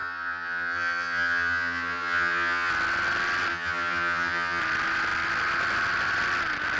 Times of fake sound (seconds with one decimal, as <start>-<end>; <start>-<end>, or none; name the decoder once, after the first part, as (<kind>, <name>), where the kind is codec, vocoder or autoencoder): 0.0-2.7 (vocoder, HiFi-GAN); 3.5-4.6